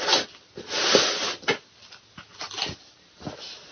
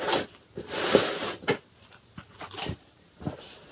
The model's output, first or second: second